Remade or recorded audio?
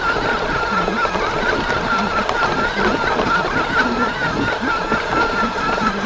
recorded